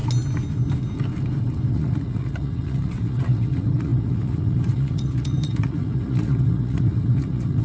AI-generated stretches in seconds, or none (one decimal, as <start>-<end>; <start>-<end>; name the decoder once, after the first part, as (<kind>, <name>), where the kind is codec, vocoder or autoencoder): 1.7-7.6 (vocoder, Vocos)